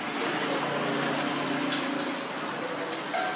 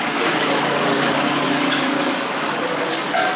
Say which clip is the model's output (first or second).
second